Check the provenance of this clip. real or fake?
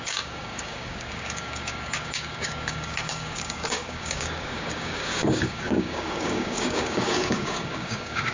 fake